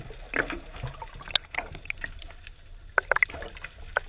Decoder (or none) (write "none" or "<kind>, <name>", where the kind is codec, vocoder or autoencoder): none